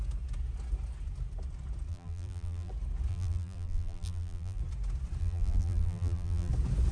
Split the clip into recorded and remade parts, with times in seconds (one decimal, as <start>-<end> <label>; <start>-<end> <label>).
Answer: 0.0-1.9 recorded; 1.9-2.7 remade; 2.7-3.1 recorded; 3.1-4.6 remade; 4.6-5.2 recorded; 5.2-6.5 remade; 6.5-6.9 recorded